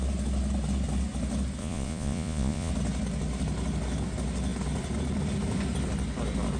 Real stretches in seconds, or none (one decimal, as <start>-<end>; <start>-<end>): 0.0-1.6; 2.7-6.6

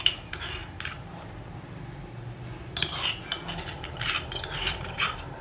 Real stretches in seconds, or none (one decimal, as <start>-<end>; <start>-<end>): 0.6-3.8

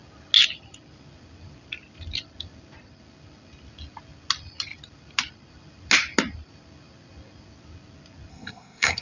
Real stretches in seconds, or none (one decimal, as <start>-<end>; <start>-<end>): 0.0-8.3

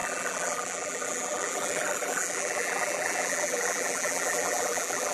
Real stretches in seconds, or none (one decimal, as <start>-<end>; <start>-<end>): none